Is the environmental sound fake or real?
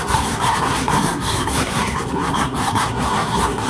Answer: fake